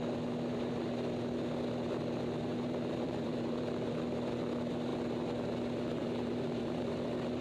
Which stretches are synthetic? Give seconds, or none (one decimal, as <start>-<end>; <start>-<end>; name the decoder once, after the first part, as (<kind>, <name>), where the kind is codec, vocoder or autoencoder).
2.5-3.9 (vocoder, BigVGAN v2); 6.0-7.4